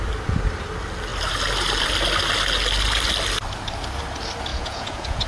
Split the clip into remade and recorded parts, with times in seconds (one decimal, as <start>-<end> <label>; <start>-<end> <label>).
0.0-4.5 recorded; 4.5-5.3 remade